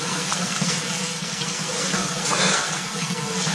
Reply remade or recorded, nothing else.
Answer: remade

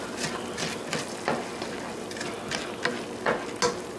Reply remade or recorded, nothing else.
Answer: recorded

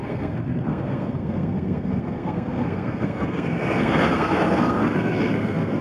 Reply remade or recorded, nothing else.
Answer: remade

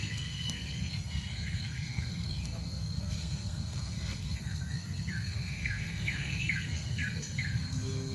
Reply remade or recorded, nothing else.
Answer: remade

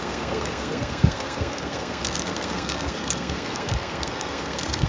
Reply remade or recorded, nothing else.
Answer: remade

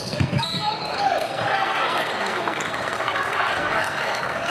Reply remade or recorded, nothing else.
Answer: remade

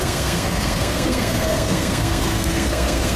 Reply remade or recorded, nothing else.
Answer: remade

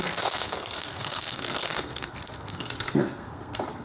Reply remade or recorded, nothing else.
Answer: remade